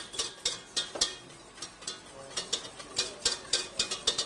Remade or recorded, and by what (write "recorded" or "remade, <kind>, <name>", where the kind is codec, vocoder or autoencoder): recorded